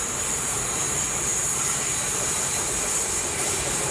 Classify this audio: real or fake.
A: fake